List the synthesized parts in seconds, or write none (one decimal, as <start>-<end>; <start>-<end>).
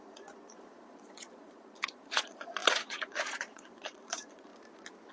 0.0-4.5